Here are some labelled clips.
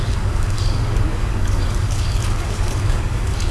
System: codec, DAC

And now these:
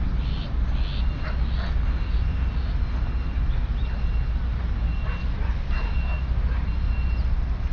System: none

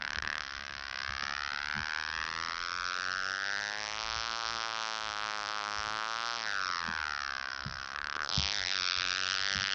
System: codec, DAC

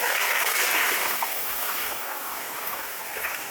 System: codec, DAC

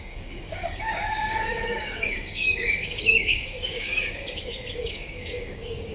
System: codec, DAC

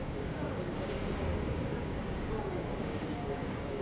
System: codec, DAC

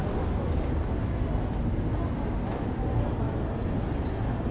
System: none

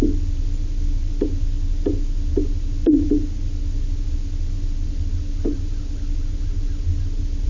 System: none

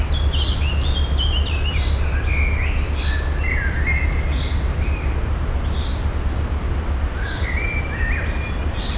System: none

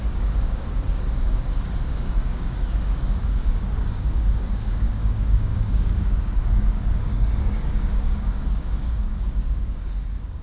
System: codec, DAC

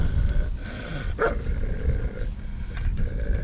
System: none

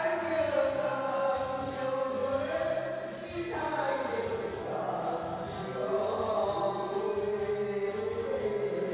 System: none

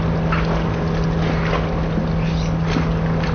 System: none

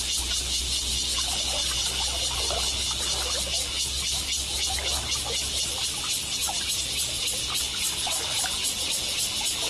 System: none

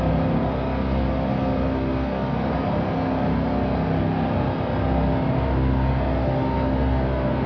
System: none